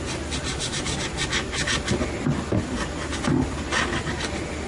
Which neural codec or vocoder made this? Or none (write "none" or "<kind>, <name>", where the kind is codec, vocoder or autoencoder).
none